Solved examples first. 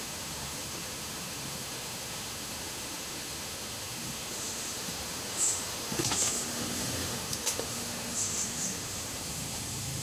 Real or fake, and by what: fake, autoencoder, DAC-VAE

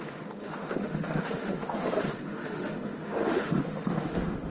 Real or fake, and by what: fake, autoencoder, DAC-VAE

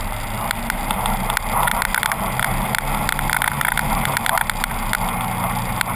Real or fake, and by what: real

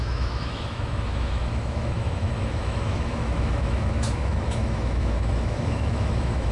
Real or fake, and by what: fake, autoencoder, DAC-VAE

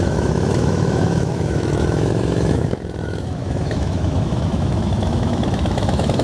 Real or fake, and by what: fake, autoencoder, DAC-VAE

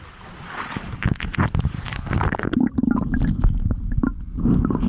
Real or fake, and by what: real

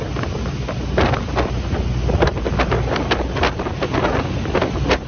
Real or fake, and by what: real